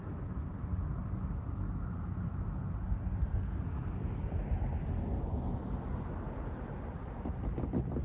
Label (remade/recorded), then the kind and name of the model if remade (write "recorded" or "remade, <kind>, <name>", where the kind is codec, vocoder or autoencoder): recorded